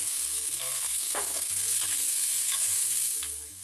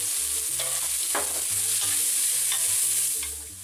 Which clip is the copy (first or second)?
first